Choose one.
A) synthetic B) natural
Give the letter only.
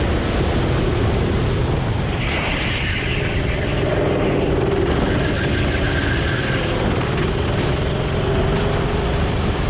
B